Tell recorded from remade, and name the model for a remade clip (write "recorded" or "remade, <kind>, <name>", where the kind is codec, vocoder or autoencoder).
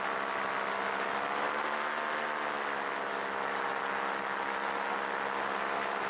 recorded